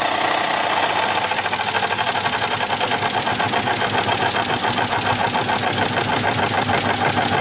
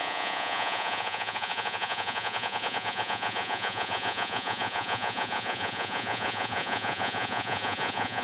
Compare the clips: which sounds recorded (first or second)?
first